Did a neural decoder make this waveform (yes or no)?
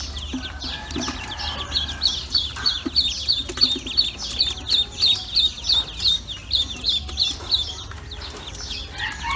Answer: no